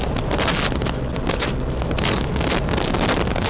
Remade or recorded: recorded